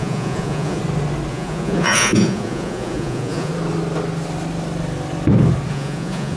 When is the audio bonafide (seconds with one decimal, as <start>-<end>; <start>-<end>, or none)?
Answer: 0.8-1.3; 3.5-5.7